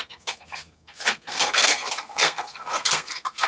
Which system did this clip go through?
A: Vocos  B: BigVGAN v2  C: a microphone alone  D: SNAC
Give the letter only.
D